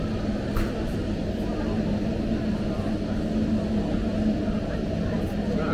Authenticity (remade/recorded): recorded